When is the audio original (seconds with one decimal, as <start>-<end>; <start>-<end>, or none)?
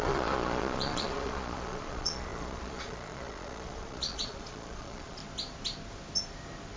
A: 5.2-6.8